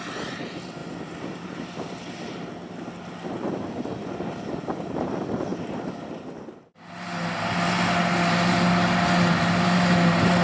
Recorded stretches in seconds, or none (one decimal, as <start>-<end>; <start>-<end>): 0.0-0.8; 1.6-10.4